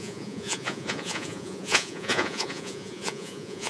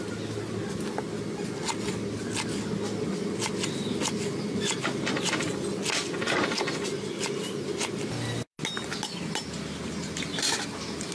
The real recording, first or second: second